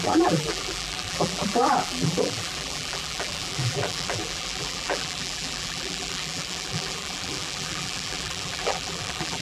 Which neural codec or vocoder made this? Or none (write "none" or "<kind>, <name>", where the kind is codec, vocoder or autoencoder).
vocoder, BigVGAN v2